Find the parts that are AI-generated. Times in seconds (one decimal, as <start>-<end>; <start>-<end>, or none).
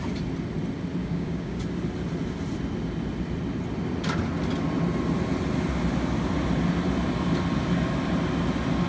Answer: 1.0-1.6